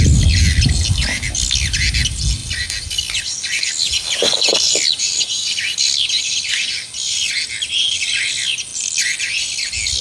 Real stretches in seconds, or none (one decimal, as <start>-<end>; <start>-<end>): 0.0-4.5; 7.3-10.0